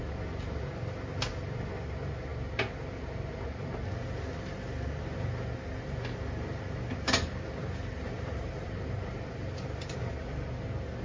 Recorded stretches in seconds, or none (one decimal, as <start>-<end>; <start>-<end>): 0.0-7.6; 10.0-11.0